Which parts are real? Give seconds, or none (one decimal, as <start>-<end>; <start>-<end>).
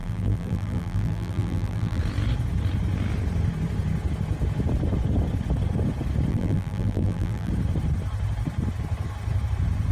2.0-6.3; 7.5-9.9